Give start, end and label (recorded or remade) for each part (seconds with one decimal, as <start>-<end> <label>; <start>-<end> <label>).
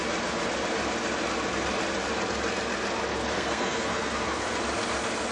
0.0-3.1 recorded; 3.1-4.4 remade; 4.4-5.3 recorded